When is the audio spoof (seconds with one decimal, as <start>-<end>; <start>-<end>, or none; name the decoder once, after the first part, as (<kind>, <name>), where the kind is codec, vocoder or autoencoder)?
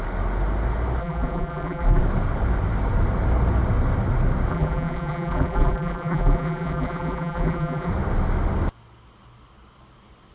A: 1.0-2.0 (vocoder, BigVGAN v2); 4.5-7.9